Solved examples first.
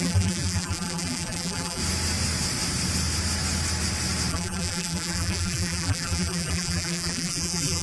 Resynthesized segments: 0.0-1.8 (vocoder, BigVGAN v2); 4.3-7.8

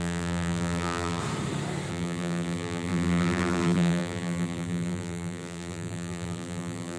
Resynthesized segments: 0.0-1.2 (vocoder, BigVGAN v2); 1.9-7.0

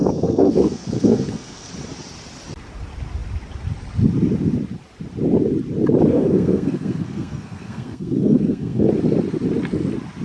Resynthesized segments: 0.0-1.7 (codec, SNAC); 6.1-8.9

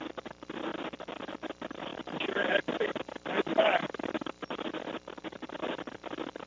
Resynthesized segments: 0.7-1.3 (vocoder, BigVGAN v2); 3.8-4.7